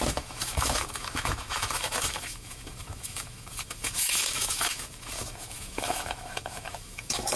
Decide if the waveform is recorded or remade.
remade